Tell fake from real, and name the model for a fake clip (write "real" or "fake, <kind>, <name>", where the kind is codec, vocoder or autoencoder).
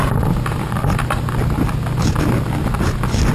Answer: real